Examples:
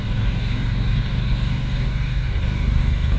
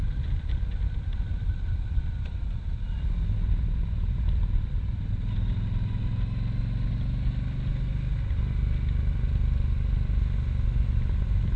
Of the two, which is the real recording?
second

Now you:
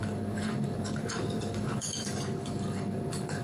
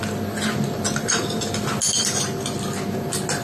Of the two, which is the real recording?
second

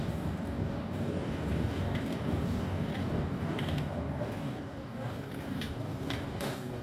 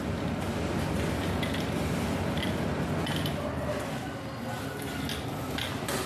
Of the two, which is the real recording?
second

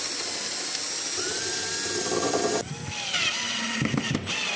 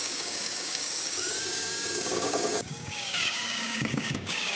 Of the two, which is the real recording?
first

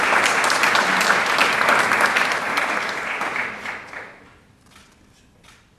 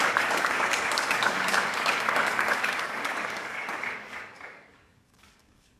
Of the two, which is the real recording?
first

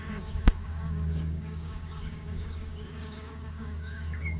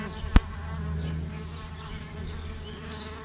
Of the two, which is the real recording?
second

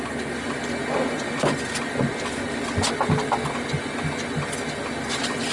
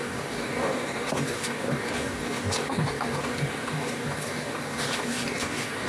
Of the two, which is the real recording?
first